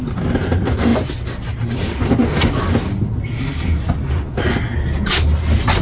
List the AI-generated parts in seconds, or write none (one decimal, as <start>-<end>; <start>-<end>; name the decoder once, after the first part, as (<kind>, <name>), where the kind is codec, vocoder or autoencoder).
none